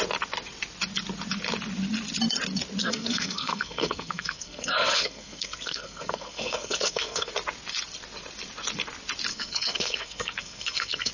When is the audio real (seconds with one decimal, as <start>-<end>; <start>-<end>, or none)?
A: 0.0-2.8; 7.3-9.3